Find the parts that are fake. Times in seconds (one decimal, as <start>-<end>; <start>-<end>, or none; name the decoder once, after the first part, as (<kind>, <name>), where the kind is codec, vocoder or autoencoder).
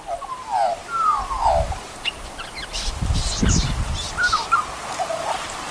none